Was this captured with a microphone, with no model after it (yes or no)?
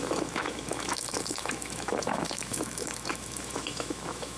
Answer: no